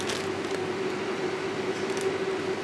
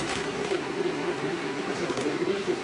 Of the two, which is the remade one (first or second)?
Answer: second